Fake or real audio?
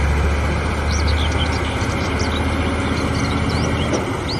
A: fake